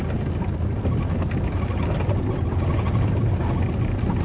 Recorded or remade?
recorded